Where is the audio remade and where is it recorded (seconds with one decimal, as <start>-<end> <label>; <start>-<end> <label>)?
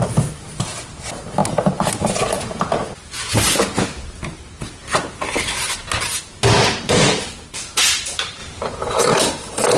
0.0-8.4 recorded; 8.4-9.0 remade; 9.0-9.8 recorded